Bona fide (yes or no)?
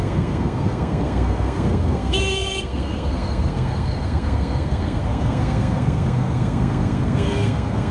no